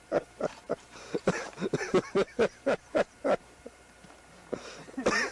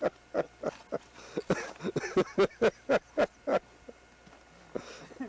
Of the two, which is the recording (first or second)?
second